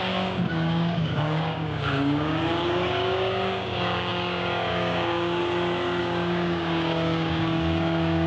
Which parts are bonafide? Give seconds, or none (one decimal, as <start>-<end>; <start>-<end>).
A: 5.4-6.0